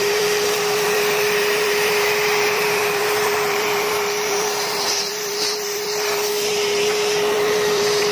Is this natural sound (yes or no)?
no